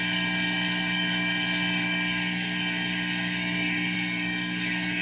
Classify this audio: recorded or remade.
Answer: remade